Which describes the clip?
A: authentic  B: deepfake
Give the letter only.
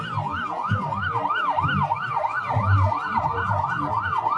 A